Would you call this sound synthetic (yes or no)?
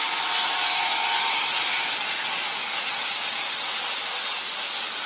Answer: no